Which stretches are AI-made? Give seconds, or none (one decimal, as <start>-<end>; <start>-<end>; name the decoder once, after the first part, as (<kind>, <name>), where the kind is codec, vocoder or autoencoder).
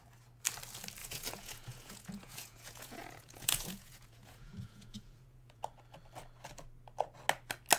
1.0-5.6 (vocoder, Vocos)